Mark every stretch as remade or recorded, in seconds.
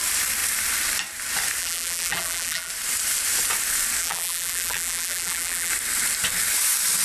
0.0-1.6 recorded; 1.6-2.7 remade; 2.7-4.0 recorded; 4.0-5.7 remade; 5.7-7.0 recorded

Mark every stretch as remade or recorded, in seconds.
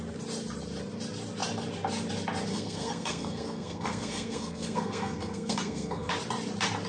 0.0-2.5 recorded; 2.5-6.1 remade; 6.1-6.9 recorded